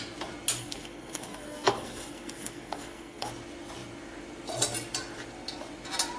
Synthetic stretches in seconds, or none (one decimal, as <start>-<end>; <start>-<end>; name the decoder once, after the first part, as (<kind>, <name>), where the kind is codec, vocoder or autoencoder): 0.6-3.3 (codec, SNAC)